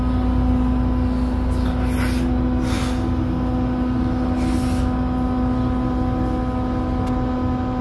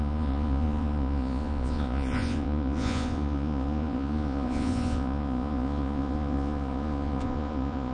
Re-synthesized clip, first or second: second